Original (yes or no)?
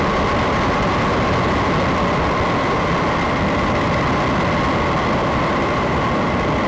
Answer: yes